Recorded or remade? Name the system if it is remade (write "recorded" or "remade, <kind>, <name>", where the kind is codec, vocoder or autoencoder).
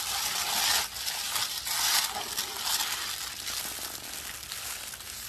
recorded